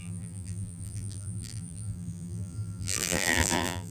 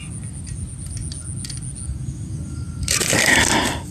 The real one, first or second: second